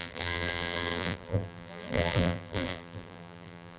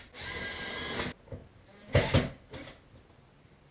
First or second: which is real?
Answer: second